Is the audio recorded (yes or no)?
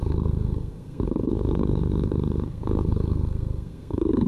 no